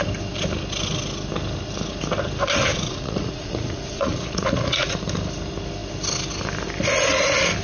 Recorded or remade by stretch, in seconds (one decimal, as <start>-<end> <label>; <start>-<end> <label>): 0.0-2.7 recorded; 2.7-4.9 remade; 4.9-7.6 recorded